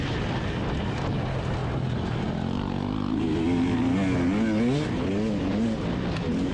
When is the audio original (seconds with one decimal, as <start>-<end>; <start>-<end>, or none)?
0.0-6.5